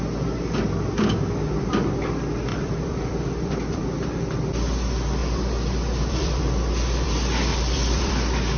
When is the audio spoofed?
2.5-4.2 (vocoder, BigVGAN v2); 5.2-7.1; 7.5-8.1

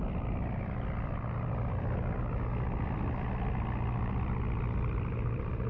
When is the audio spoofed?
5.1-5.7 (vocoder, BigVGAN v2)

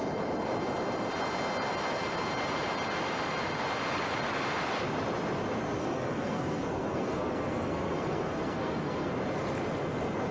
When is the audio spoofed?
5.8-9.1 (codec, SNAC)

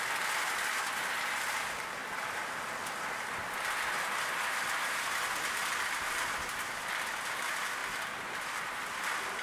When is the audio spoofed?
none

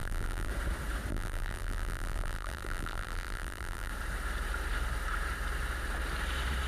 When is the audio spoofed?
0.0-0.5 (vocoder, BigVGAN v2); 1.1-3.9